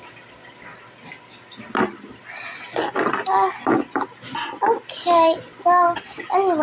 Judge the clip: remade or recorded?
recorded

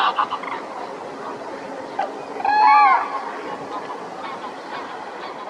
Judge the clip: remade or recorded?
recorded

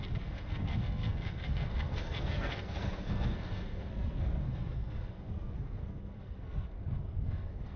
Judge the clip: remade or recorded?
remade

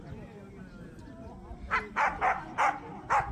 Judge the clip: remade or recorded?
recorded